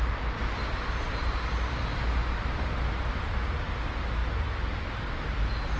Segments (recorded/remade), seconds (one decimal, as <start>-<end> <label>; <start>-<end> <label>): 0.0-5.8 recorded